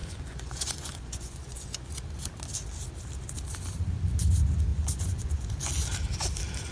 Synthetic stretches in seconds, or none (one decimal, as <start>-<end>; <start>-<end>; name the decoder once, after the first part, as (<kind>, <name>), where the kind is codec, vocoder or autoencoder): 0.0-1.9 (vocoder, Vocos); 4.7-5.7